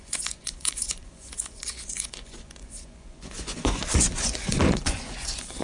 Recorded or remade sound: remade